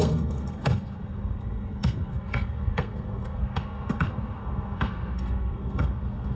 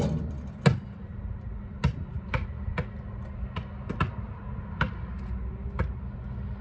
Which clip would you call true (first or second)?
second